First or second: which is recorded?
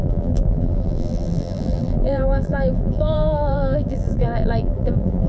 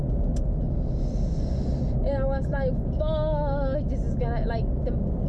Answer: second